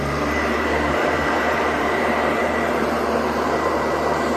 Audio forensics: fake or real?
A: fake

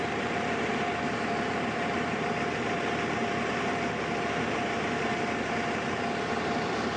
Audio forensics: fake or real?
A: fake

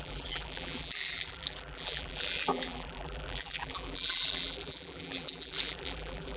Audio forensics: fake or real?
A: fake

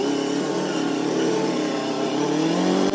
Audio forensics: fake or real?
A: fake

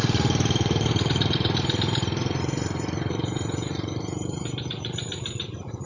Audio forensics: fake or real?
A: fake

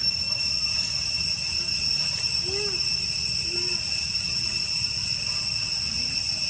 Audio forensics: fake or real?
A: real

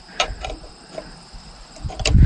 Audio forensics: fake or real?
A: fake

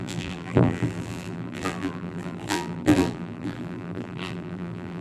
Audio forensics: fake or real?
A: fake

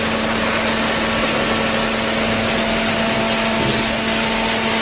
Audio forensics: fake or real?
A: real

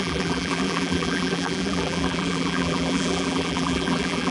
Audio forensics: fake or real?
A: fake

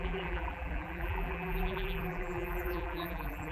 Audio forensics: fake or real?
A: fake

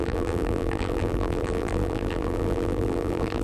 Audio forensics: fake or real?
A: fake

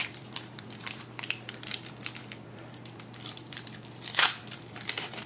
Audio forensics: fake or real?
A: fake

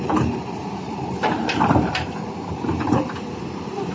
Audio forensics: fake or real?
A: fake